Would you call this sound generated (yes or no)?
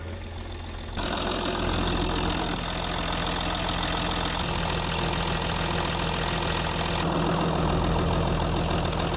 no